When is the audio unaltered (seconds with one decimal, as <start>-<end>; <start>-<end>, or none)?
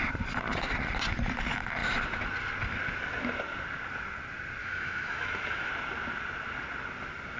0.0-4.6; 5.7-7.4